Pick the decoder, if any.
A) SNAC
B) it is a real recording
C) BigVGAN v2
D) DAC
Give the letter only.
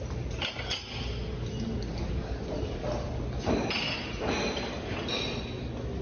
B